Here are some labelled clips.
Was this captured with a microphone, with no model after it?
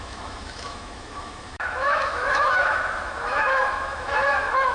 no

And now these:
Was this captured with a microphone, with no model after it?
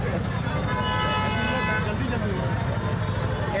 yes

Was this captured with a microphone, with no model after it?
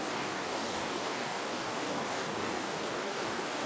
no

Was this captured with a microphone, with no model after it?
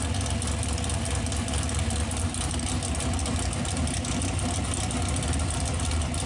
yes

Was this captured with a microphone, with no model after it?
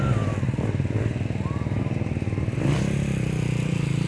yes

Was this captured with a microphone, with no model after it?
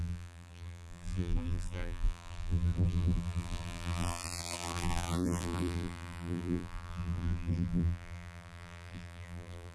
no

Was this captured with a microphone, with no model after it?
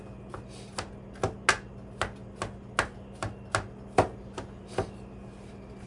yes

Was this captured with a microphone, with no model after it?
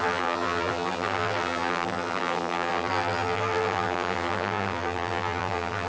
no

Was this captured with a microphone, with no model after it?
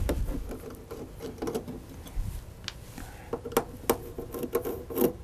yes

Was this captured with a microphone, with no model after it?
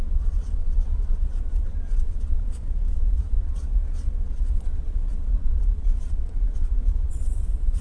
no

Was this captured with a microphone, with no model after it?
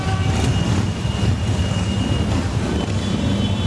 yes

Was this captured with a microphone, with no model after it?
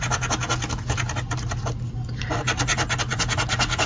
yes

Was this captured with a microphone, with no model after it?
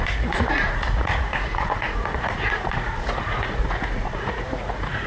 no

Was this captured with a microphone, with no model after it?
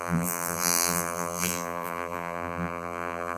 no